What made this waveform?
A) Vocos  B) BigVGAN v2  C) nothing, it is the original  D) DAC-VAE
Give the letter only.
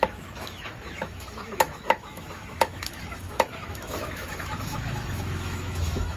D